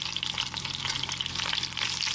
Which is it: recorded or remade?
recorded